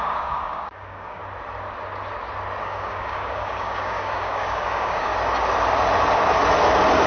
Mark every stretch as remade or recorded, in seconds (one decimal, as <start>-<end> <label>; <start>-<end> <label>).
0.0-1.2 remade; 1.2-2.6 recorded; 2.6-5.1 remade; 5.1-7.1 recorded